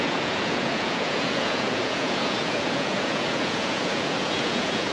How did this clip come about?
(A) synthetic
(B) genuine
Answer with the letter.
A